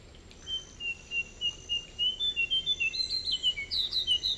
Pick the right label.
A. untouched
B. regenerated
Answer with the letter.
A